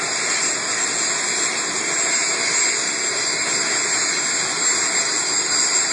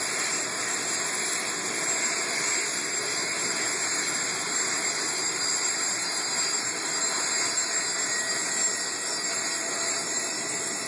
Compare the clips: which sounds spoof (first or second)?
second